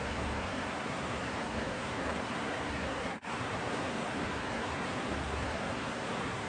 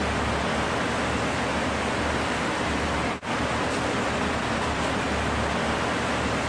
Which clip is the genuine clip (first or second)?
second